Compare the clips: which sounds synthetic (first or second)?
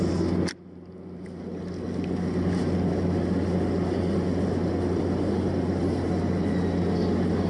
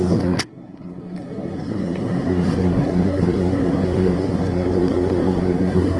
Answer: second